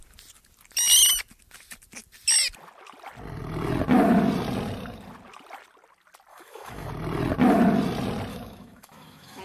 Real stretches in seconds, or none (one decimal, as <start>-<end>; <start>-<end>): 0.0-6.3; 6.9-8.3